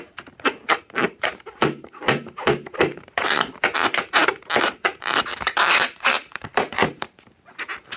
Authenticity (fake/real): fake